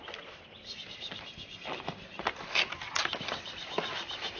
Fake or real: real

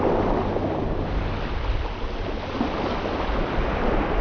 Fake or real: real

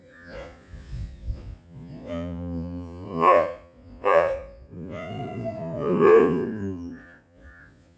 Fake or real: fake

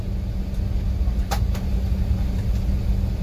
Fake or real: real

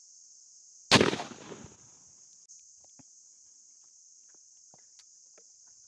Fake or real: real